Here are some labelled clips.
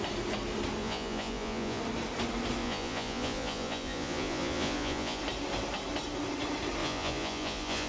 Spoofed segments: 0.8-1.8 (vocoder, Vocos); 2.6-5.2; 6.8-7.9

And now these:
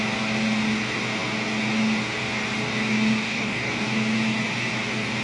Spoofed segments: 3.2-3.7 (codec, DAC)

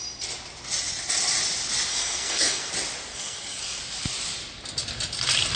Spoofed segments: 1.9-2.7 (codec, SNAC); 3.1-3.8

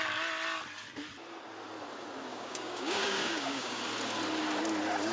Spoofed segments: 2.3-3.8 (codec, DAC)